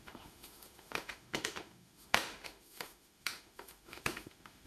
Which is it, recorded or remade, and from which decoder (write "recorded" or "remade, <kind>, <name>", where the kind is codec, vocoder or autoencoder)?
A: remade, autoencoder, DAC-VAE